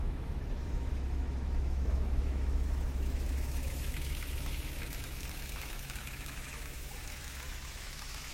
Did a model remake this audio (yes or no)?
yes